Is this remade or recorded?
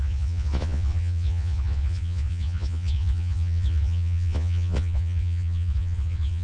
remade